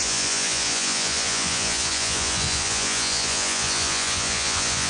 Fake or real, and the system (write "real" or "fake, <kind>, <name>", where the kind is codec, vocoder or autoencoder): fake, vocoder, Vocos